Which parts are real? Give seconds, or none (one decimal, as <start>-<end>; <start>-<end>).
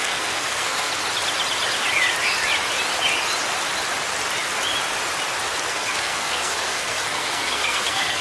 0.9-5.7